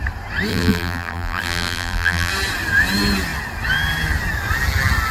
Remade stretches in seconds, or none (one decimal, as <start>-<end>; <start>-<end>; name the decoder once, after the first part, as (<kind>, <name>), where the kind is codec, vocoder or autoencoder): 0.5-2.3 (vocoder, BigVGAN v2)